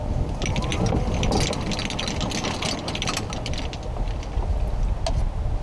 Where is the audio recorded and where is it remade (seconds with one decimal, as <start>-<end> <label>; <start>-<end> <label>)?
0.0-5.6 recorded